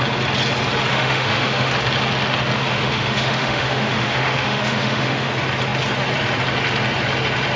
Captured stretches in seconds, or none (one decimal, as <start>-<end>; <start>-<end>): 0.0-0.9; 1.7-2.6; 5.3-7.6